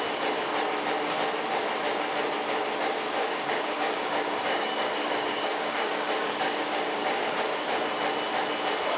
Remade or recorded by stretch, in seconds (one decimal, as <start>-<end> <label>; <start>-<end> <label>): 0.0-3.2 recorded; 3.2-7.3 remade; 7.3-9.0 recorded